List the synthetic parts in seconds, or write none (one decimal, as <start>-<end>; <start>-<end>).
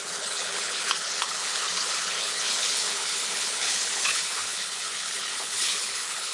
0.0-6.3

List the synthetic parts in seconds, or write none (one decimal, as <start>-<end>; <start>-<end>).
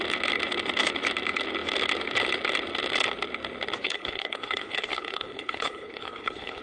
3.8-6.6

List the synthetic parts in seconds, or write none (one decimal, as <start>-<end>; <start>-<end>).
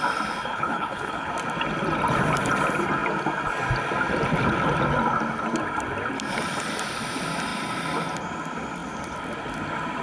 0.5-1.3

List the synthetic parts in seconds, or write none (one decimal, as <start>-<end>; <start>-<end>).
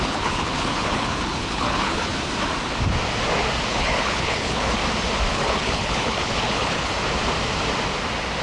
0.0-2.1; 3.7-4.8; 5.3-6.9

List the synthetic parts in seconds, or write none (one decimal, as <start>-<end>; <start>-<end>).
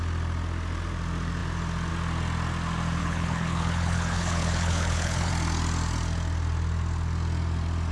3.0-5.3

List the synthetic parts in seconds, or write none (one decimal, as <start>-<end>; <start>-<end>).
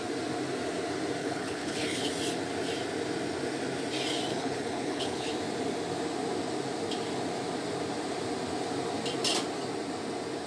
1.2-2.1; 4.3-5.3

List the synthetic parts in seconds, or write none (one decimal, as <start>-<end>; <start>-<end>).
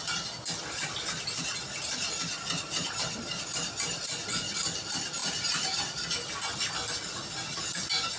none